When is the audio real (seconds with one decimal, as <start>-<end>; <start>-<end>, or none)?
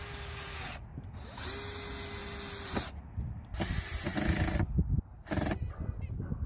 0.0-6.5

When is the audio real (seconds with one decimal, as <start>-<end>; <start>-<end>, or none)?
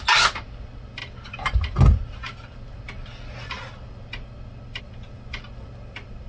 0.0-6.3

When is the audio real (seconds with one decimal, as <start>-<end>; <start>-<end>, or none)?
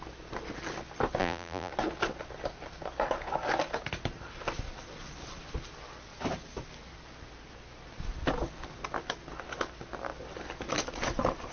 0.0-1.2; 1.7-11.5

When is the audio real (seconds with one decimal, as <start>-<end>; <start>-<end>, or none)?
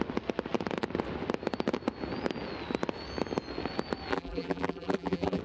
0.0-4.1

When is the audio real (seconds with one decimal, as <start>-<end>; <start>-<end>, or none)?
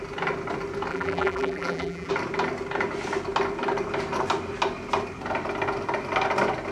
0.0-0.9; 2.1-6.7